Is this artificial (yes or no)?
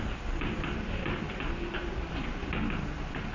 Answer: no